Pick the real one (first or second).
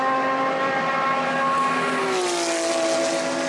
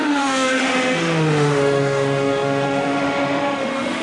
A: first